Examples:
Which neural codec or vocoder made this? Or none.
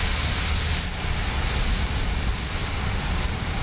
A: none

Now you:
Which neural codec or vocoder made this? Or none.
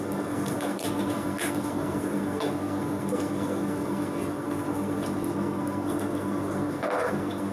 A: codec, SNAC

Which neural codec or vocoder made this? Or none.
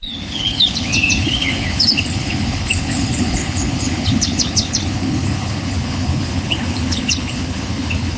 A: codec, HILCodec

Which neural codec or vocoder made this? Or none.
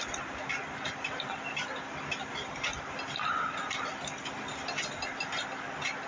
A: none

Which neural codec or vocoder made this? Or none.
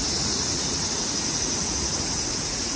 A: vocoder, Vocos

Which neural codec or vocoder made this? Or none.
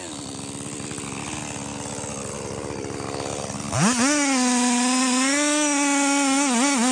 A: none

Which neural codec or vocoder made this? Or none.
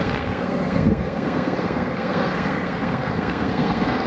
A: codec, SNAC